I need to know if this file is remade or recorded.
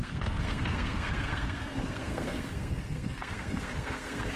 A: remade